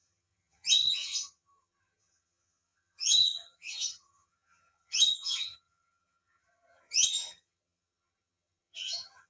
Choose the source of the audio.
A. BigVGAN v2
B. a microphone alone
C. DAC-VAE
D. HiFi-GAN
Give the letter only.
D